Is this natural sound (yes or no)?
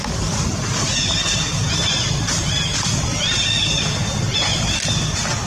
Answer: yes